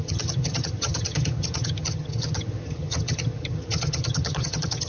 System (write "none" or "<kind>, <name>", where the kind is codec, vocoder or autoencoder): vocoder, HiFi-GAN